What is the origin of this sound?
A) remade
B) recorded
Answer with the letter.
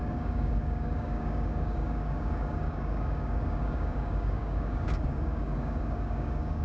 A